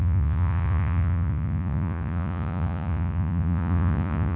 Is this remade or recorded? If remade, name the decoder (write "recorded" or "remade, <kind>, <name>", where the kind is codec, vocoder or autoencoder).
remade, vocoder, Vocos